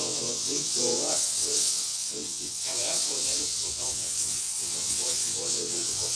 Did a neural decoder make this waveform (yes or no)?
yes